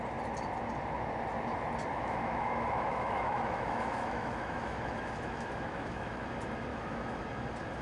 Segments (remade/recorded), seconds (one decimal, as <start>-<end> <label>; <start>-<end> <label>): 0.0-1.9 recorded; 1.9-6.3 remade; 6.3-6.7 recorded; 6.7-7.2 remade; 7.2-7.8 recorded